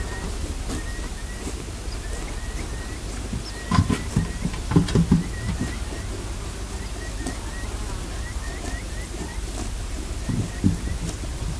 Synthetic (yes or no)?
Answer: no